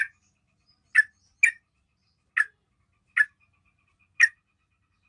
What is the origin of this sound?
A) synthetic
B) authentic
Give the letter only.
B